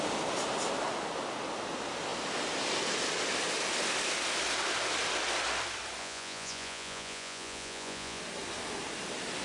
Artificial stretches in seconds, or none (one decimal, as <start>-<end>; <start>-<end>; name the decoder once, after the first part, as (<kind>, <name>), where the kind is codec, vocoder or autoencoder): 6.0-8.2 (vocoder, Vocos)